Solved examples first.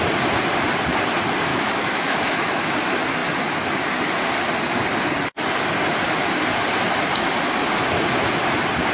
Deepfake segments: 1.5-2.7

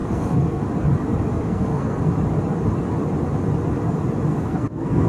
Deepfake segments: 0.0-0.6; 1.3-2.1; 4.3-5.1

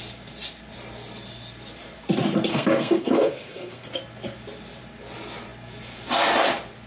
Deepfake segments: 2.5-4.0

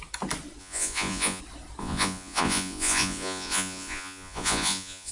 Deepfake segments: 0.6-1.4; 1.8-5.1

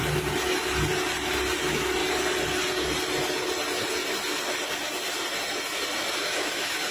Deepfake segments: 1.6-2.0; 6.1-6.9

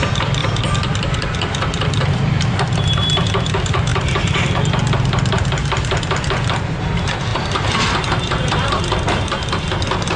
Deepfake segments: 0.4-3.2; 3.9-4.7

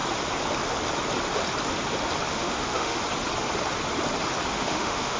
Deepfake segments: 2.3-3.0; 4.5-5.2

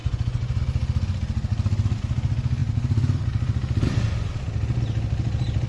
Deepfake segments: 0.0-0.6